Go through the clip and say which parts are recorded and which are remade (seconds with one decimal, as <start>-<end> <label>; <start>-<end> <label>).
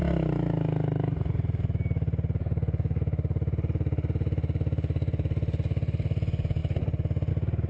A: 0.0-2.4 recorded; 2.4-3.0 remade; 3.0-7.7 recorded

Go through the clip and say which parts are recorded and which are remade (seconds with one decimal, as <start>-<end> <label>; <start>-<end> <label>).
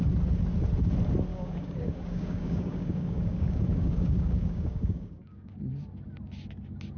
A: 0.0-1.3 recorded; 1.3-5.5 remade; 5.5-7.0 recorded